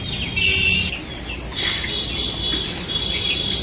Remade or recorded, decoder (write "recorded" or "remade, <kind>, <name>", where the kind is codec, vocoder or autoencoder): recorded